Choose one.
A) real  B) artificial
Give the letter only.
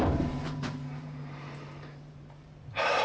B